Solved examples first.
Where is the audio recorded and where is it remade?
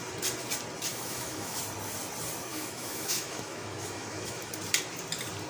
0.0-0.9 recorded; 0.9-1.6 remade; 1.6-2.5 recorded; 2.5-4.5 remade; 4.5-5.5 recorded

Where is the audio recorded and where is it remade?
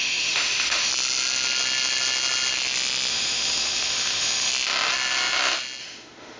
0.0-0.9 remade; 0.9-3.1 recorded; 3.1-4.5 remade; 4.5-5.8 recorded; 5.8-6.4 remade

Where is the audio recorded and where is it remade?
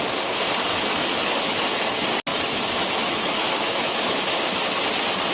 0.0-0.7 recorded; 0.7-1.8 remade; 1.8-2.3 recorded; 2.3-4.2 remade; 4.2-5.3 recorded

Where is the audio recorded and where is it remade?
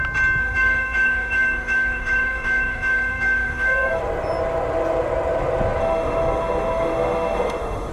0.0-0.4 recorded; 0.4-4.0 remade; 4.0-5.8 recorded; 5.8-7.9 remade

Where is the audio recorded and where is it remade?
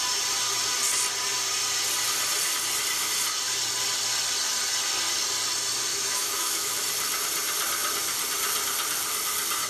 0.0-5.9 recorded; 5.9-6.7 remade; 6.7-9.7 recorded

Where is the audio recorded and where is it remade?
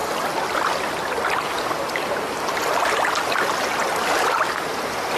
0.0-5.2 recorded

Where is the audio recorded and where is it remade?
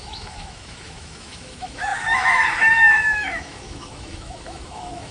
0.0-5.1 remade